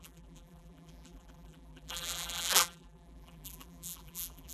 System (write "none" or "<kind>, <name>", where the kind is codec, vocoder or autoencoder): vocoder, BigVGAN v2